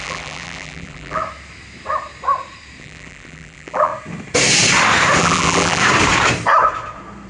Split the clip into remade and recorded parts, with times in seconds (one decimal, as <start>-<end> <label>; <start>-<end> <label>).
0.0-1.2 remade; 1.2-2.8 recorded; 2.8-3.9 remade; 3.9-5.2 recorded; 5.2-5.8 remade; 5.8-7.3 recorded